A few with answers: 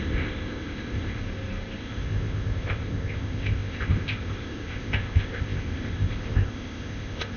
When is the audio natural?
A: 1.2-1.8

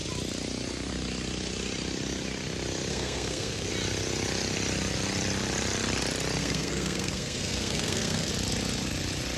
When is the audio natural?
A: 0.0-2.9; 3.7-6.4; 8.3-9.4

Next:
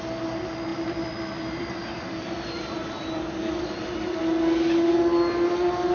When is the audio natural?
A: 0.0-0.7; 4.2-5.9